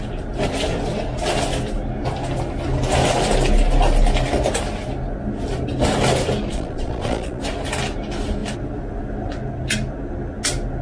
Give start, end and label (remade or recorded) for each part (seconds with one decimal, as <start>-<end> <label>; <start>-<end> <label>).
0.0-6.5 recorded; 6.5-7.4 remade; 7.4-10.8 recorded